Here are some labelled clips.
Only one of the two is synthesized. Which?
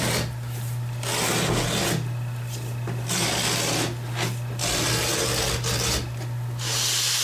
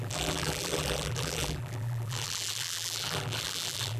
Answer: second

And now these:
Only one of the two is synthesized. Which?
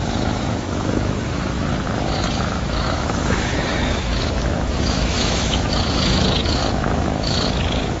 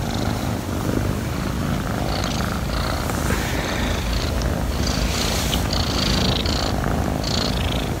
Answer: first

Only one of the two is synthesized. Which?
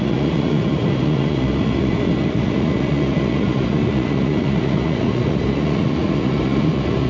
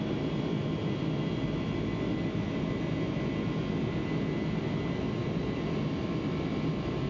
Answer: first